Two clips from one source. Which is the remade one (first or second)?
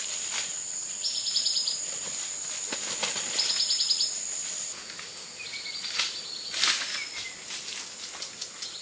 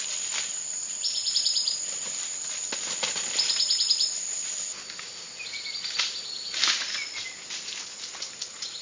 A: second